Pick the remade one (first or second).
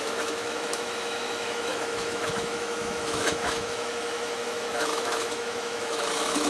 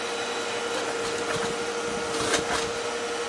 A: first